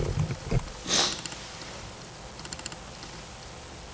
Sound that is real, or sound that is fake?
real